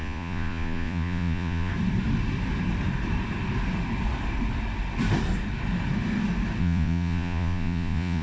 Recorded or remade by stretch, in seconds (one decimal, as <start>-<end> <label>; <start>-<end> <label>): 0.0-1.7 remade; 1.7-6.6 recorded; 6.6-8.2 remade

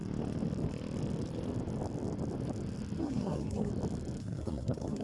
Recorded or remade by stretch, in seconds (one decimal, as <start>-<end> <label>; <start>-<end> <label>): 0.0-3.0 recorded; 3.0-3.7 remade; 3.7-4.2 recorded; 4.2-5.0 remade

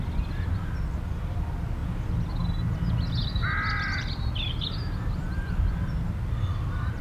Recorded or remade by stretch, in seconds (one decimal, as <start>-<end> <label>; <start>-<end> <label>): 0.0-7.0 recorded

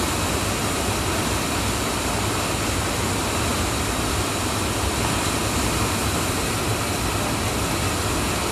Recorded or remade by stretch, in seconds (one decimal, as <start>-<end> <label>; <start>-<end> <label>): 0.0-3.5 recorded; 3.5-4.1 remade; 4.1-6.0 recorded; 6.0-6.8 remade; 6.8-8.5 recorded

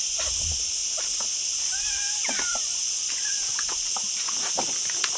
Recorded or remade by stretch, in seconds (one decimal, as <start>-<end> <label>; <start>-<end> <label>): 0.0-0.8 recorded; 0.8-3.9 remade; 3.9-5.2 recorded

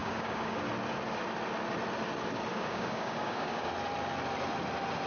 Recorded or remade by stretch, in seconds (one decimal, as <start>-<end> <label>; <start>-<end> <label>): 0.0-0.7 remade; 0.7-2.5 recorded; 2.5-3.7 remade; 3.7-5.1 recorded